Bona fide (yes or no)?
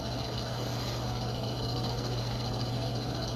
no